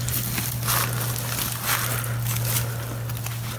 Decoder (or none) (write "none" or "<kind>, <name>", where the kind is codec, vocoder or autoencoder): none